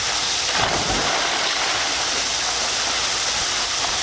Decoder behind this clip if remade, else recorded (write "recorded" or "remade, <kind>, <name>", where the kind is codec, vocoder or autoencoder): recorded